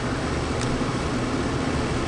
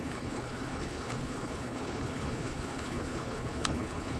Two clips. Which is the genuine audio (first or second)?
first